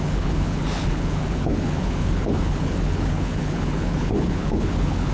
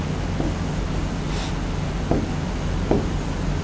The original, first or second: second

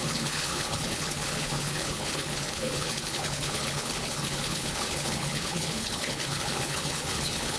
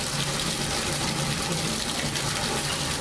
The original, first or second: second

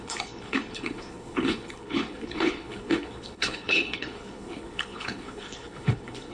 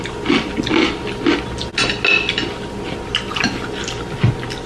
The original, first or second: second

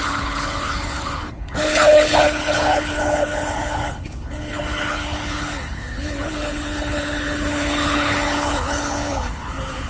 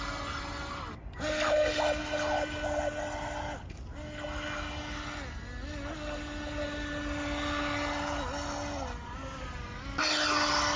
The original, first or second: second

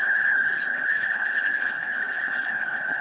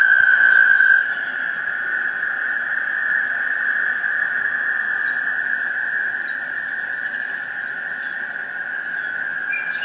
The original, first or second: second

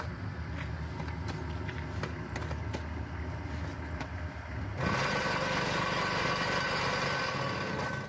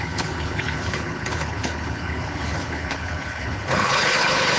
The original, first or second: first